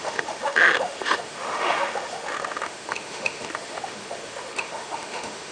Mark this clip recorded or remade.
remade